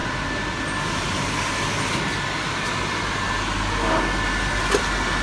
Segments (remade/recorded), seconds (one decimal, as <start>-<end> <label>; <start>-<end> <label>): 0.0-5.2 recorded